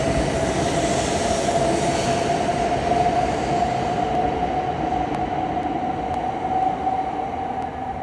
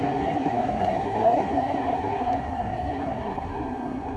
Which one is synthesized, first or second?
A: second